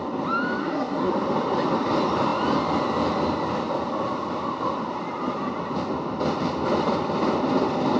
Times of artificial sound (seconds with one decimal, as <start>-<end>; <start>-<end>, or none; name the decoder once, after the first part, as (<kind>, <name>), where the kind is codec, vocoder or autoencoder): 0.6-1.1 (codec, SNAC)